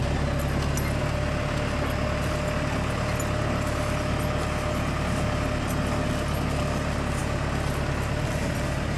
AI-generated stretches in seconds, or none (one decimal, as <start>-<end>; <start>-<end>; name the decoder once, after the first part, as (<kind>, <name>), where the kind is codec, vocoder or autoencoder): none